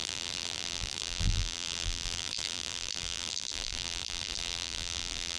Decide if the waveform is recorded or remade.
remade